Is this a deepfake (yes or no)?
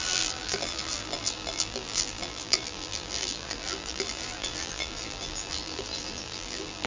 yes